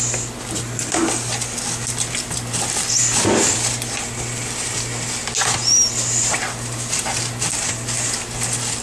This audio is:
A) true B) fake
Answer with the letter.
A